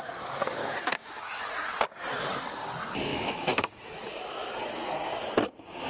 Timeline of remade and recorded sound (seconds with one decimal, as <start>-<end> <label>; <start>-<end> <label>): 0.0-0.6 recorded; 0.6-1.3 remade; 1.3-3.1 recorded; 3.1-4.0 remade; 4.0-5.9 recorded